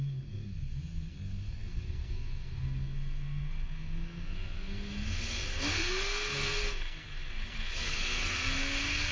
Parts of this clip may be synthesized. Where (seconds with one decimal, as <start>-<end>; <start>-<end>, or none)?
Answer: 0.0-9.1